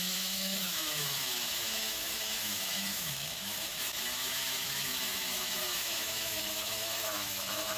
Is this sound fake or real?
fake